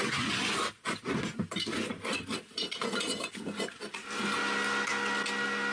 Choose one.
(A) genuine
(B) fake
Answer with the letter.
A